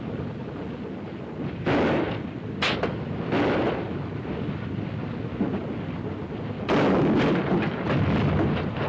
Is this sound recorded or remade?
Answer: recorded